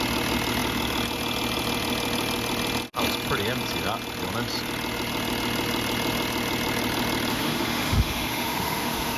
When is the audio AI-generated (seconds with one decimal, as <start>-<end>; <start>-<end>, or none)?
7.3-9.2